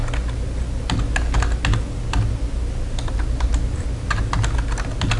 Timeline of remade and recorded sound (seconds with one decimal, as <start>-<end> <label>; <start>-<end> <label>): 0.0-5.2 recorded